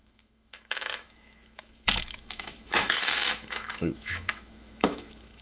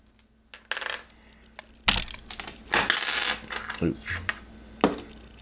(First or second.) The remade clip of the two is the first